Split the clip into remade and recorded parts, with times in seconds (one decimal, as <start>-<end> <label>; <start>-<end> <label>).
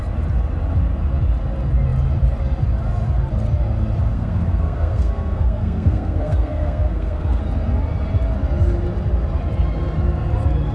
0.0-4.1 recorded; 4.1-7.4 remade; 7.4-10.7 recorded